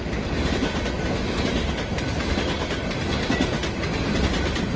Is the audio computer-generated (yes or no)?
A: no